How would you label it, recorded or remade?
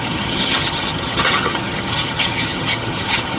remade